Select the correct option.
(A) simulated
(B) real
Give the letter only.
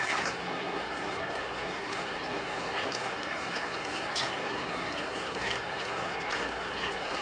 A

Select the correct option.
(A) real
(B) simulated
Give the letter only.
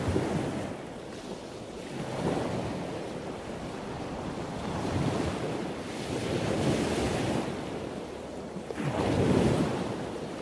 A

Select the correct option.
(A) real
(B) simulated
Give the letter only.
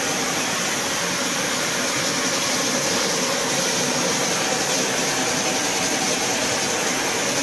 A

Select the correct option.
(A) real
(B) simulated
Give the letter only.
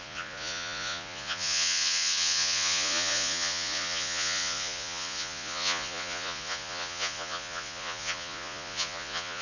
B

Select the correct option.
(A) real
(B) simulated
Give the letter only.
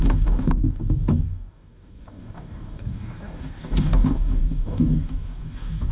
B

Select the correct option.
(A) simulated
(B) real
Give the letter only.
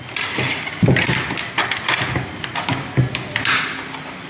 B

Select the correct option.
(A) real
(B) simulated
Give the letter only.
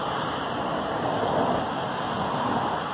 A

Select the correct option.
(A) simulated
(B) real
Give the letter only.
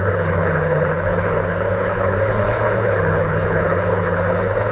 A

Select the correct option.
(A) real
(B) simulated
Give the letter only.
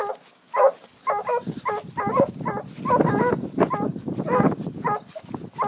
A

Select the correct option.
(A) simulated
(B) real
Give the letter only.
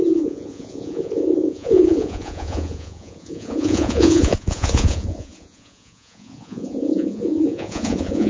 A